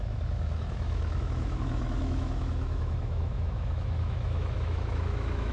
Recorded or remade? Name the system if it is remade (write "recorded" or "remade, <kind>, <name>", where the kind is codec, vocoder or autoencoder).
remade, autoencoder, DAC-VAE